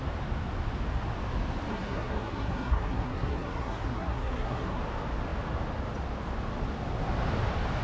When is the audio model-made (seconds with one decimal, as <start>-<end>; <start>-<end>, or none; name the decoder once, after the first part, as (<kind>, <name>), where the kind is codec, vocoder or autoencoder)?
1.7-4.8 (codec, SNAC)